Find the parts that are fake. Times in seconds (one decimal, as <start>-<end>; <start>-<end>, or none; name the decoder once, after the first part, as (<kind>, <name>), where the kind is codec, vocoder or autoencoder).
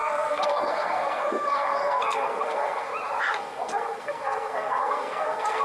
0.0-2.9 (codec, SNAC); 3.4-5.6